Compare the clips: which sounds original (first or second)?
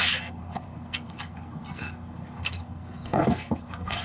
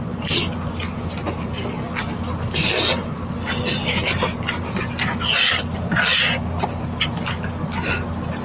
second